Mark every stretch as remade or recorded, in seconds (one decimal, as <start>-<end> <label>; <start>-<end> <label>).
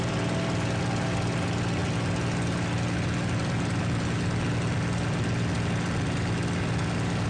0.0-7.3 recorded